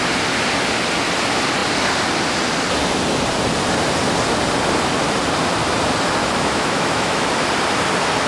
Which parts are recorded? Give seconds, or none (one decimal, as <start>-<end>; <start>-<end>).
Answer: 0.0-6.2; 7.3-8.3